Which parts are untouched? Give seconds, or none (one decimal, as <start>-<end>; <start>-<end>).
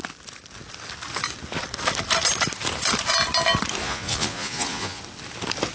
0.0-3.8; 5.0-5.7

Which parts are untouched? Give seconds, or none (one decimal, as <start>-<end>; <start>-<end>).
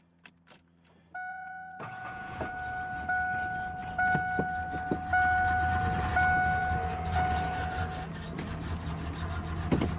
0.0-1.3; 2.5-10.0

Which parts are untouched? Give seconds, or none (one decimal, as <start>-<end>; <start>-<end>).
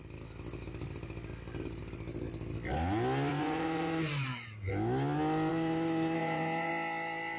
0.0-3.3; 4.7-5.5; 6.7-7.4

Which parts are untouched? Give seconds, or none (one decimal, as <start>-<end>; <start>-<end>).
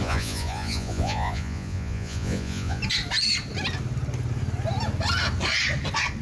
2.8-6.2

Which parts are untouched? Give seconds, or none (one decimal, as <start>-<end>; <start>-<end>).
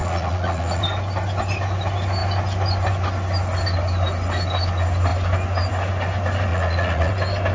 0.8-6.5; 7.1-7.5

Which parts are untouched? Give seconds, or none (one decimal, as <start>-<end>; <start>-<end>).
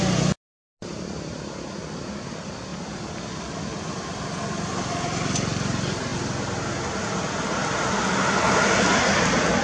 0.0-9.6